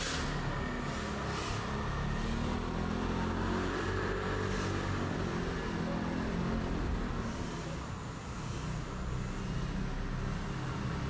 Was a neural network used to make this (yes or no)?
no